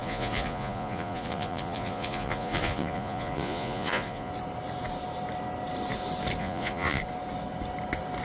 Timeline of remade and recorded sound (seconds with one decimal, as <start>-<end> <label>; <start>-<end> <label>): 0.0-4.3 remade; 4.3-6.4 recorded; 6.4-7.0 remade; 7.0-8.2 recorded